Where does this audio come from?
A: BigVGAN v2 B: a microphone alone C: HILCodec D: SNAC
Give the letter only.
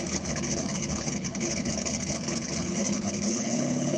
C